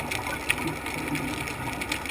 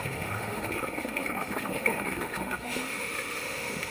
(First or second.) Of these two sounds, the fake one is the second